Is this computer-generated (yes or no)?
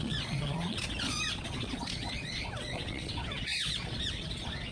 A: yes